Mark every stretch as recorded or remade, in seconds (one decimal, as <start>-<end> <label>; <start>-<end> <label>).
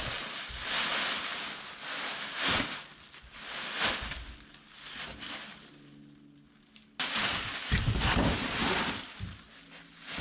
0.0-10.2 recorded